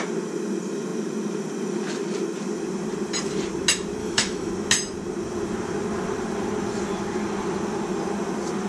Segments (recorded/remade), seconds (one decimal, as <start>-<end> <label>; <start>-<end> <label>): 0.0-4.0 recorded; 4.0-4.5 remade; 4.5-8.7 recorded